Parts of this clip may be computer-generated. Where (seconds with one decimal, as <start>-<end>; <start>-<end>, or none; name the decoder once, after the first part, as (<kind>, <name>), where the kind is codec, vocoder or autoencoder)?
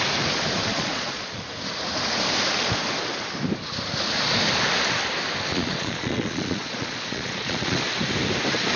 0.7-1.4 (vocoder, Vocos); 5.5-7.9